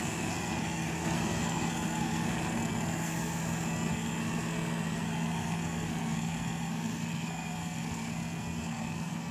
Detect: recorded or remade remade